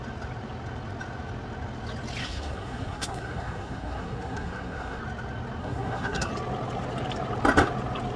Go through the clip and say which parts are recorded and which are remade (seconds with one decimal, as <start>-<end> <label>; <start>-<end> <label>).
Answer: 0.0-2.2 recorded; 2.2-5.0 remade; 5.0-5.6 recorded; 5.6-6.3 remade; 6.3-8.2 recorded